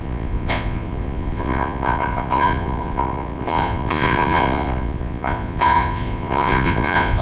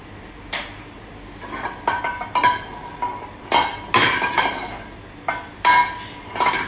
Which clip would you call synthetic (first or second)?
first